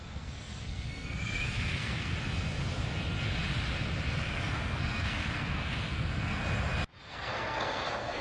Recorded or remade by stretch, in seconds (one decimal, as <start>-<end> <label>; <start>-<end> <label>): 0.0-2.1 remade; 2.1-4.1 recorded; 4.1-6.4 remade; 6.4-7.0 recorded; 7.0-8.2 remade